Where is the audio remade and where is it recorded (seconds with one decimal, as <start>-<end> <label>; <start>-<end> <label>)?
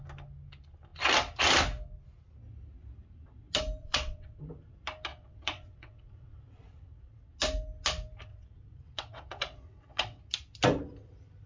0.0-3.8 recorded; 3.8-4.5 remade; 4.5-5.1 recorded; 5.1-7.2 remade; 7.2-8.3 recorded; 8.3-10.2 remade; 10.2-11.5 recorded